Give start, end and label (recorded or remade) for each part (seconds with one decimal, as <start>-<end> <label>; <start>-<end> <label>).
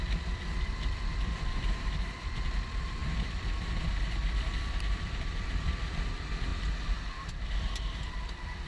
0.0-6.5 remade; 6.5-7.3 recorded; 7.3-8.7 remade